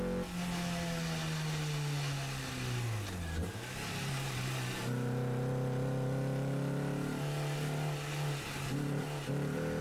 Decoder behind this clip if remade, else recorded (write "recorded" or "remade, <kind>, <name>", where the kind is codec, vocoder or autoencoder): recorded